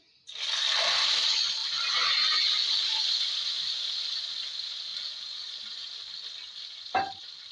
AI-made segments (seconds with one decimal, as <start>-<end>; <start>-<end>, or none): 1.6-3.0